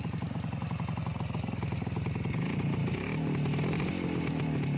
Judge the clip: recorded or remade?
recorded